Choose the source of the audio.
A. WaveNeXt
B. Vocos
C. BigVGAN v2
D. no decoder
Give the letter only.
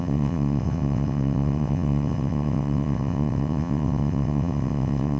A